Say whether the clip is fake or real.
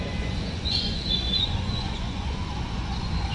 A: fake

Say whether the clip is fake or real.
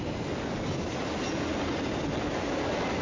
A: real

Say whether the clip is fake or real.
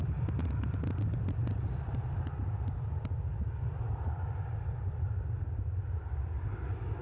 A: real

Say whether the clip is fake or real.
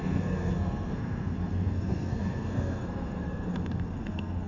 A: fake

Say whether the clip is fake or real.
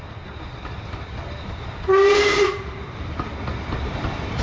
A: real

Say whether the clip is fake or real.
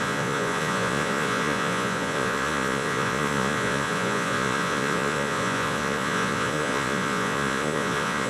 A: fake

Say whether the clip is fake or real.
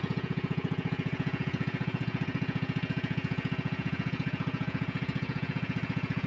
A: fake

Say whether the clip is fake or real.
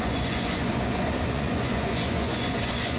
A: fake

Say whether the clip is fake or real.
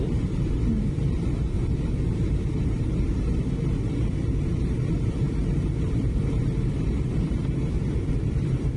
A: fake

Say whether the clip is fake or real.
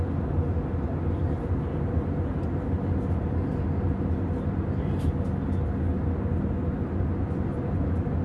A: real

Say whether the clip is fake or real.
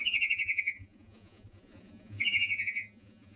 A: fake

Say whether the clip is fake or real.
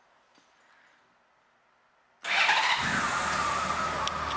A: real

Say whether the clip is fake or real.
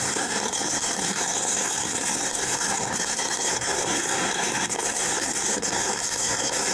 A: fake